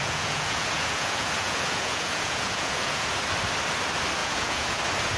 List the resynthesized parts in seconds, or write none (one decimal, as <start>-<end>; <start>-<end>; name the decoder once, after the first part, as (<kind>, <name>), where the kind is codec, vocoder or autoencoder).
0.0-3.1 (vocoder, Vocos); 4.2-4.8